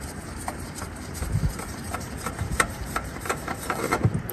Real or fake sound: fake